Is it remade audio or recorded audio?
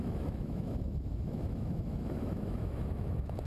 remade